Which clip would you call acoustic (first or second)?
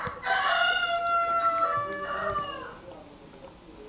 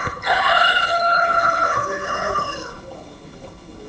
first